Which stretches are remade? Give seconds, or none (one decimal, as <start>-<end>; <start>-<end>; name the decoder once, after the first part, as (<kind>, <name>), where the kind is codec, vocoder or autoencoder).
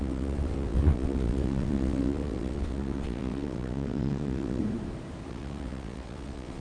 0.0-4.6 (vocoder, WaveNeXt); 5.3-6.6